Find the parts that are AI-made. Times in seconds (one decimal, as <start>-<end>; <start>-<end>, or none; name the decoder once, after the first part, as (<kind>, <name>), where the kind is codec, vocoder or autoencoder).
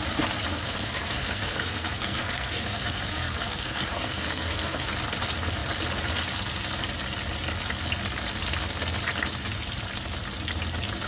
0.5-4.9 (codec, SNAC)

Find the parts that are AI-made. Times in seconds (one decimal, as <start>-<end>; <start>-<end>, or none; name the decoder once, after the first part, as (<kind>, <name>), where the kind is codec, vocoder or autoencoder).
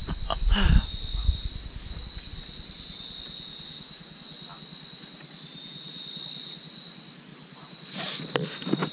5.5-6.2 (vocoder, BigVGAN v2)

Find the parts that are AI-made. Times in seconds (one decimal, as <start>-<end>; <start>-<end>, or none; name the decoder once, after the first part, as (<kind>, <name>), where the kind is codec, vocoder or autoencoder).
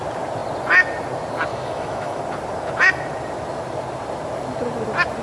1.5-2.2 (autoencoder, DAC-VAE)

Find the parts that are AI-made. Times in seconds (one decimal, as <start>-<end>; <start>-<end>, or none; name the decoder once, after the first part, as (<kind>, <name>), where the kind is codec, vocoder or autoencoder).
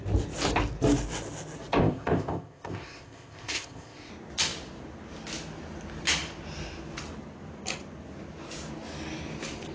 1.8-4.1 (codec, ZipCodec)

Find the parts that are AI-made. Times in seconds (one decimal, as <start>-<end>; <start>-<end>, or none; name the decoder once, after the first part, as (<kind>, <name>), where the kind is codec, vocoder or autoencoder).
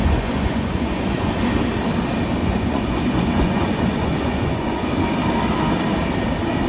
0.0-1.3 (vocoder, Vocos); 2.4-4.9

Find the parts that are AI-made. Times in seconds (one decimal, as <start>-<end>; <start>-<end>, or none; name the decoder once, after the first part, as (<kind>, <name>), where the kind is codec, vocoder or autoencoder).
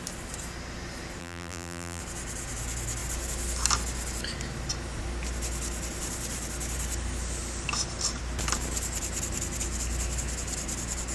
1.2-2.0 (vocoder, BigVGAN v2)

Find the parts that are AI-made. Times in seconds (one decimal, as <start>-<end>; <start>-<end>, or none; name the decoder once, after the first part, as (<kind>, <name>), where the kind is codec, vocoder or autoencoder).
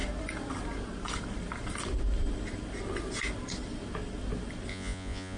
4.7-5.4 (vocoder, Vocos)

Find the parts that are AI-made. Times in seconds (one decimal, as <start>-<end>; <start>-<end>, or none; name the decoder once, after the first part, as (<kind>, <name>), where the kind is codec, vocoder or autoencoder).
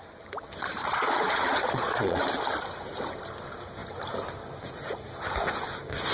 0.8-2.3 (vocoder, Vocos)